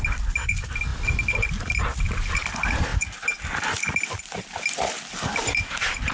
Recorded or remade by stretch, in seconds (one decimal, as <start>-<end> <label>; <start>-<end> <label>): 0.0-6.1 recorded